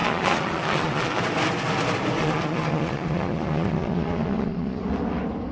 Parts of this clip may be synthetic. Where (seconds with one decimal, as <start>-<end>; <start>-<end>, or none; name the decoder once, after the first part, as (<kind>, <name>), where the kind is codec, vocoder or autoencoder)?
0.0-1.2 (vocoder, Vocos); 2.2-4.8